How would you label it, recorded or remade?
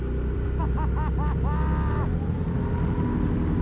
recorded